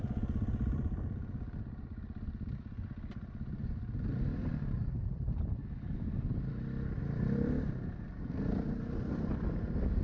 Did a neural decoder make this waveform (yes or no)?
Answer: no